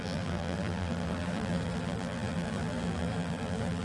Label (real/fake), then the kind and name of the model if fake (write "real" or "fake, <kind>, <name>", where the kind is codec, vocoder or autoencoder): fake, vocoder, BigVGAN v2